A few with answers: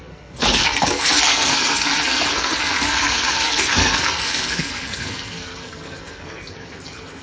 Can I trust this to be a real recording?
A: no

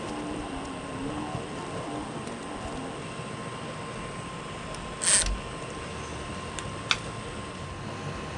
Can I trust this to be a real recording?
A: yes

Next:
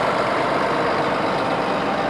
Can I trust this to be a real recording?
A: yes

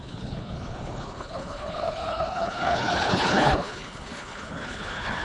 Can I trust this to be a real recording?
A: no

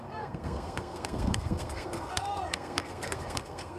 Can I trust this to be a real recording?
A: no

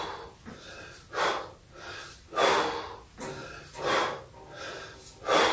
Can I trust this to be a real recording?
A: yes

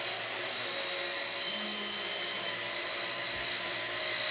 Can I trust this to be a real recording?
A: yes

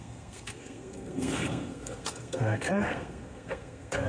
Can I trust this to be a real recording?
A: no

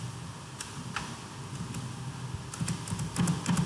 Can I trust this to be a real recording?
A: yes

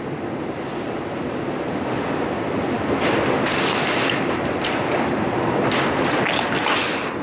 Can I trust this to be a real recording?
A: yes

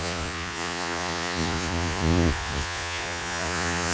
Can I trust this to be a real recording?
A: no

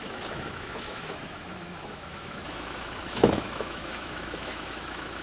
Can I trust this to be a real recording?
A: no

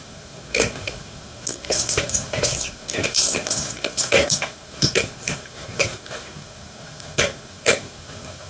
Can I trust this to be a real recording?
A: no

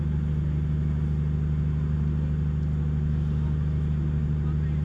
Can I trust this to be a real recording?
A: yes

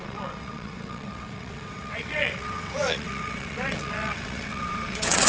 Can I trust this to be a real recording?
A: no